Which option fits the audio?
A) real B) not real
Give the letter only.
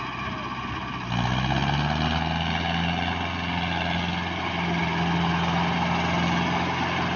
A